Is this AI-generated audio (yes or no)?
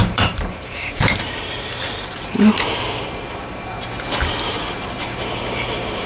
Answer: yes